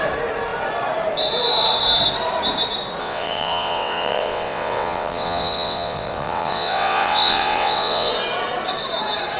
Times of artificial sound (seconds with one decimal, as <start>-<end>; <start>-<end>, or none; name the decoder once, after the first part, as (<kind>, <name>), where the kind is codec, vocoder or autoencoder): 3.0-8.1 (vocoder, WaveNeXt)